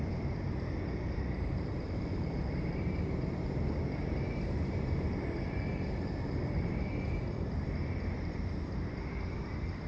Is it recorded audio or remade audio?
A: remade